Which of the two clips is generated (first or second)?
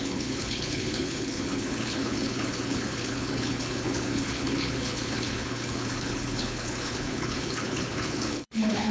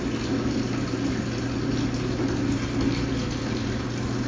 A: first